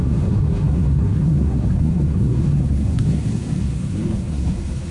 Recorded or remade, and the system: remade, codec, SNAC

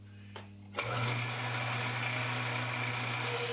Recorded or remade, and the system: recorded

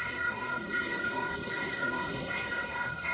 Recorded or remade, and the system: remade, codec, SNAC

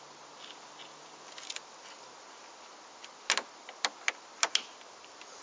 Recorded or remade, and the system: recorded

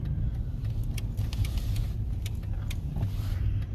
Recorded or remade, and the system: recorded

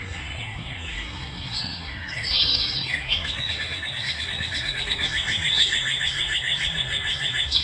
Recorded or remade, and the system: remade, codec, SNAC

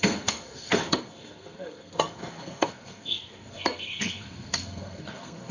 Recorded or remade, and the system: remade, codec, SNAC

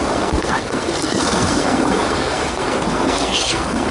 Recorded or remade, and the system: remade, codec, SNAC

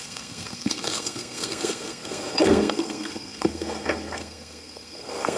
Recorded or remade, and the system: remade, codec, SNAC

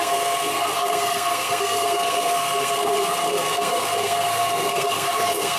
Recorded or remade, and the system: remade, codec, SNAC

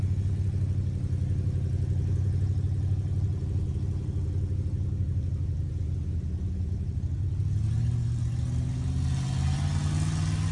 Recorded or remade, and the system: recorded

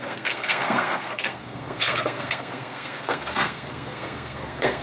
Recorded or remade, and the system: remade, codec, SNAC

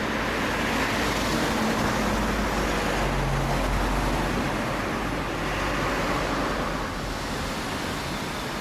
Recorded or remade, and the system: recorded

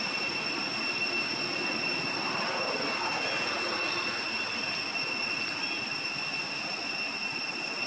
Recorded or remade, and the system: recorded